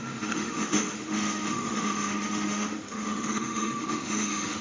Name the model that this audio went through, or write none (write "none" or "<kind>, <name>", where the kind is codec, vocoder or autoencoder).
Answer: autoencoder, DAC-VAE